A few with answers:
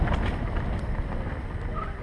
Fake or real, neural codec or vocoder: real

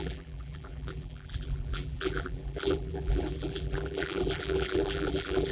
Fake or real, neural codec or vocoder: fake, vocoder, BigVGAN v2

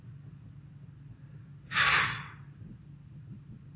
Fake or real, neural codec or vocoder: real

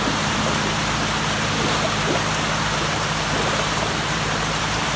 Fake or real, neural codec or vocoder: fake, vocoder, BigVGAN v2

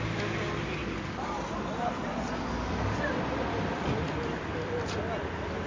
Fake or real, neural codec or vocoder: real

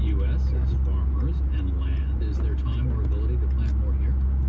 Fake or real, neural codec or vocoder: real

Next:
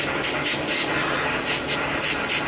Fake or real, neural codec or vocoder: real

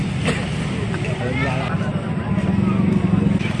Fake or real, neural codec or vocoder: fake, vocoder, BigVGAN v2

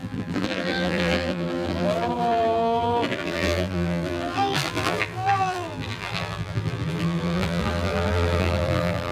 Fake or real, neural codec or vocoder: fake, vocoder, BigVGAN v2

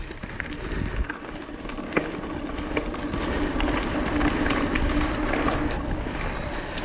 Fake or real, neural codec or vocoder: fake, vocoder, BigVGAN v2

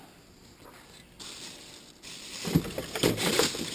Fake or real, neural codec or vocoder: fake, vocoder, BigVGAN v2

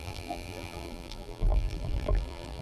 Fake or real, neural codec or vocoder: fake, vocoder, BigVGAN v2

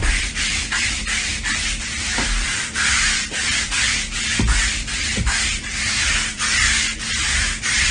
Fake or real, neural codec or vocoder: fake, vocoder, BigVGAN v2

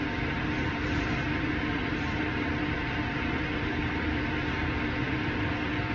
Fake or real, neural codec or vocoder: fake, vocoder, BigVGAN v2